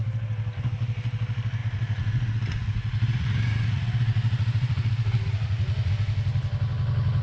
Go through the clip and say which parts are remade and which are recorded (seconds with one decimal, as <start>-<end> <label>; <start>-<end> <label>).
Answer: 0.0-1.6 recorded; 1.6-5.9 remade; 5.9-7.2 recorded